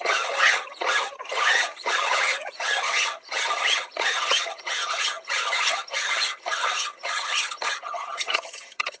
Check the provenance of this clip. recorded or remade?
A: remade